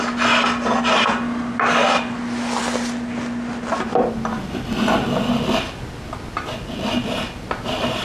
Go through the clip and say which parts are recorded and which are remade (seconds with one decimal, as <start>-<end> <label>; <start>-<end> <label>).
0.0-8.0 recorded